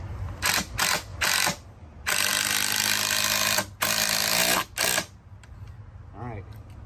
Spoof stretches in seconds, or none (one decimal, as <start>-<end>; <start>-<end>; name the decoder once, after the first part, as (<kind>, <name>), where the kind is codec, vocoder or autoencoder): none